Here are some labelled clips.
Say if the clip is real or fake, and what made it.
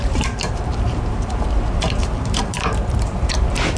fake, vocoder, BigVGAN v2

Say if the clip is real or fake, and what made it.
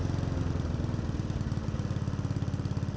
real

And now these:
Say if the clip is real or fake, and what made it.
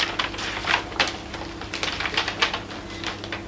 real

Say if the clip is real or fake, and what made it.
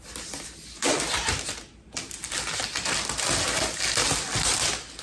real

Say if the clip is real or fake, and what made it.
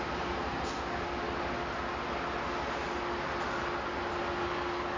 real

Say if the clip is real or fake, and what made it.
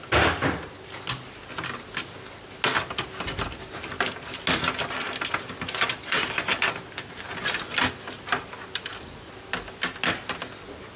real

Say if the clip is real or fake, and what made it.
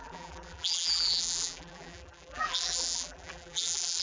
fake, vocoder, BigVGAN v2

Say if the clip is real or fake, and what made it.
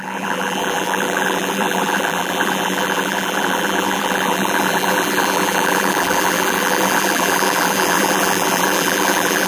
fake, vocoder, BigVGAN v2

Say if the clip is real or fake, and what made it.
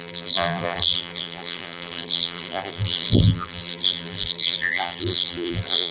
fake, vocoder, BigVGAN v2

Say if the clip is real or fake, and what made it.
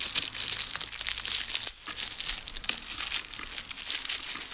real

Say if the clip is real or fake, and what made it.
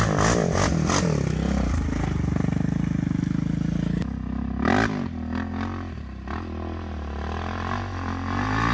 real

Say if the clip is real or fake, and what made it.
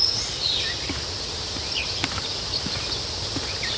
real